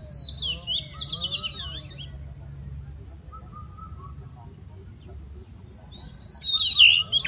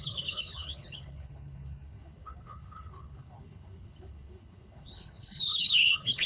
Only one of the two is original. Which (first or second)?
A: first